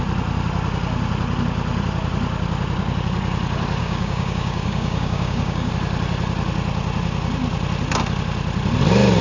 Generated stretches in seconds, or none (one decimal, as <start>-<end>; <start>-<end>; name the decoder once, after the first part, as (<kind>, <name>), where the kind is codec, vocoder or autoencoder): 3.8-5.7 (codec, DAC)